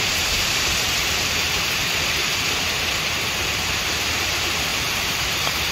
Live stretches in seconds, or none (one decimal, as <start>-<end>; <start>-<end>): 1.8-3.4